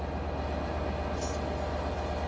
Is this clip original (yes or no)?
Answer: yes